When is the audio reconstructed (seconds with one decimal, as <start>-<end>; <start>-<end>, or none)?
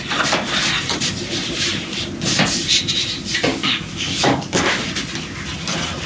3.5-4.8